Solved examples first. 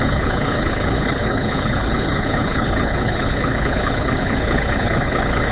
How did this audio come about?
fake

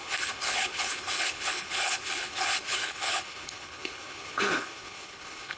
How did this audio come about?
fake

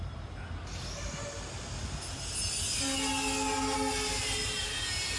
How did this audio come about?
real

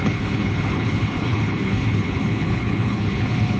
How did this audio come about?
fake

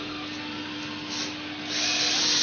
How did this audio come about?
real